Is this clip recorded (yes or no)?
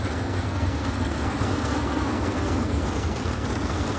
no